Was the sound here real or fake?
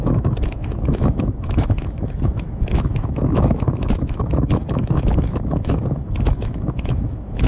fake